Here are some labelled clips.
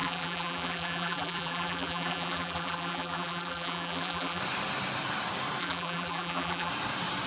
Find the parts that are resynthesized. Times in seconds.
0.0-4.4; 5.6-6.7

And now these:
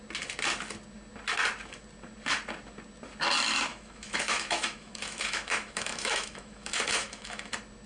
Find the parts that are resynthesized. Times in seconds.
3.7-7.5

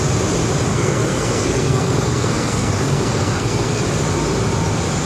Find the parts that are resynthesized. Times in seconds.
0.7-3.8

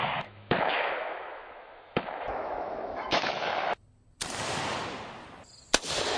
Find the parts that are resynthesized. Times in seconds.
0.0-3.7

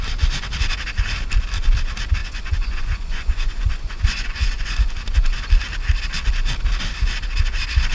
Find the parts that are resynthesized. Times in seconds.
2.2-5.5

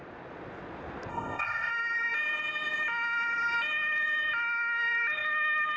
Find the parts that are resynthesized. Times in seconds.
1.1-1.7

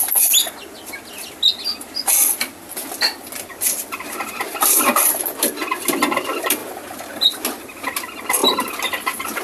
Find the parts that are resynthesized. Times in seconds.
3.5-5.0; 6.6-7.4; 8.4-9.0